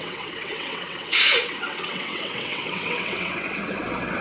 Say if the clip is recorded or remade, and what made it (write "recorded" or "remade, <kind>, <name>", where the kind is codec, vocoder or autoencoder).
remade, vocoder, WaveNeXt